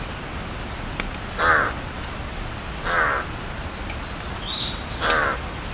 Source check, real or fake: real